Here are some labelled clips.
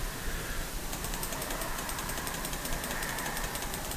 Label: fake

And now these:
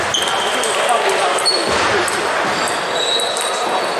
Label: real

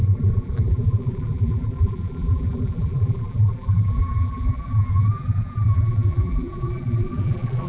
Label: fake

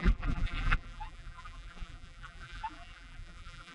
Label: fake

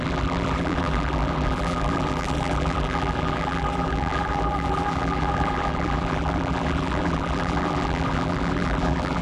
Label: fake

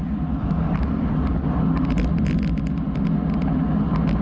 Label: real